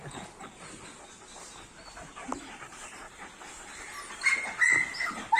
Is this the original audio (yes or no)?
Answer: yes